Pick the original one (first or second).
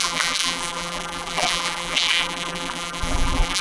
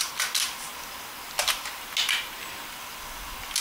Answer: second